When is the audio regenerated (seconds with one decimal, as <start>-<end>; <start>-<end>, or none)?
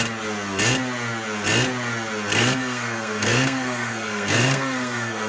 2.3-5.3